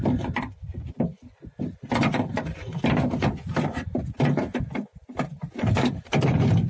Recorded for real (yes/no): yes